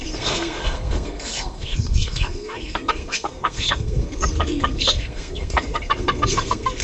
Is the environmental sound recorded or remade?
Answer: remade